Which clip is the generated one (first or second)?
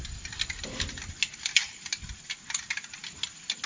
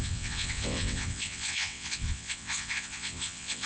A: second